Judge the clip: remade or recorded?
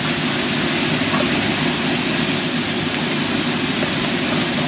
recorded